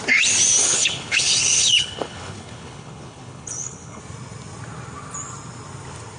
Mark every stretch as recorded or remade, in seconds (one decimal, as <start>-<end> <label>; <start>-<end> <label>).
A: 0.0-0.6 recorded; 0.6-4.0 remade; 4.0-6.2 recorded